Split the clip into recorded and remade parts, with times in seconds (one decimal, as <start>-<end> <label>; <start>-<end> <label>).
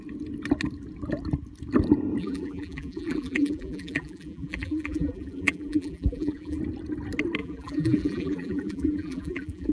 0.0-2.2 recorded; 2.2-6.6 remade; 6.6-7.4 recorded; 7.4-9.7 remade